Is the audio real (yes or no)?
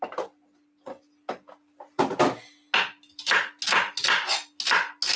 yes